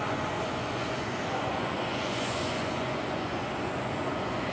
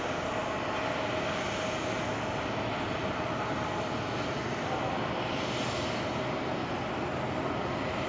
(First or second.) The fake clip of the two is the first